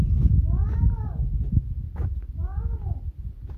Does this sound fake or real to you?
real